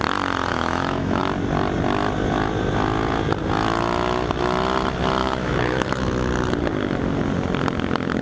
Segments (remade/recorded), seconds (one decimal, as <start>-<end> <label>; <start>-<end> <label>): 0.0-0.5 recorded; 0.5-1.2 remade; 1.2-5.2 recorded; 5.2-6.3 remade; 6.3-8.2 recorded